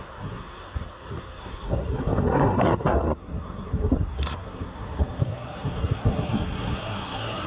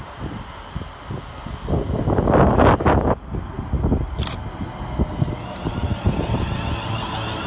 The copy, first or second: first